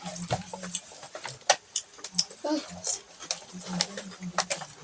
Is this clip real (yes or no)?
yes